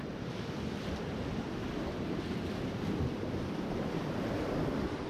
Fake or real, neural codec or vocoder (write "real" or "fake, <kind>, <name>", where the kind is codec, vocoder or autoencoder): real